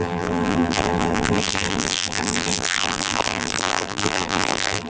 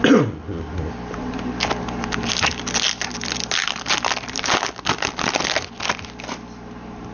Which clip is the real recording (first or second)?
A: second